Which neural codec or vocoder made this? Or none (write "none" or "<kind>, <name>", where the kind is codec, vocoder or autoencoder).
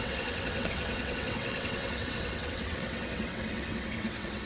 vocoder, WaveNeXt